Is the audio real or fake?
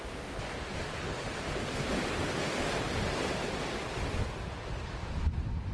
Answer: real